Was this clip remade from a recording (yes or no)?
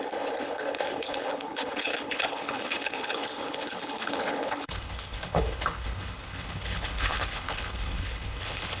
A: yes